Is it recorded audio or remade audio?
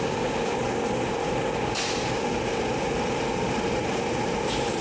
recorded